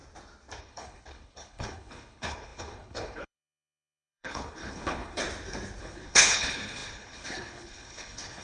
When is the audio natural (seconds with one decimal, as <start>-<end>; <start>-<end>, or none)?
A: 0.0-0.6; 5.2-5.8